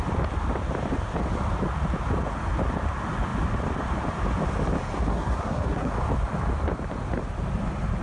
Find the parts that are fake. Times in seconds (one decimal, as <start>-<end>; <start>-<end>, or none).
5.1-5.9